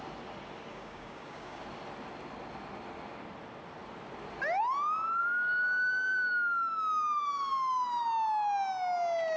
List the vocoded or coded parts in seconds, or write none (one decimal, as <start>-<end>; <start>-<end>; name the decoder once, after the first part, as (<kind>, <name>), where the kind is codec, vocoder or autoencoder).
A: 0.7-1.6 (codec, DAC); 5.2-8.0